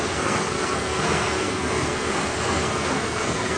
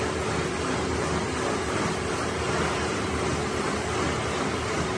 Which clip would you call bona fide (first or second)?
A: second